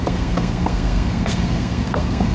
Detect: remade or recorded remade